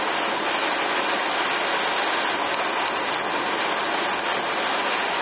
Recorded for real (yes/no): yes